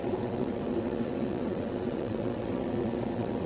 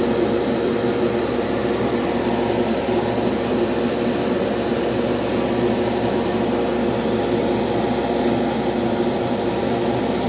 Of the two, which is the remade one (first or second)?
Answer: first